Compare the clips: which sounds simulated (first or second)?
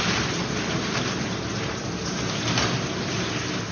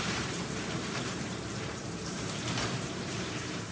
second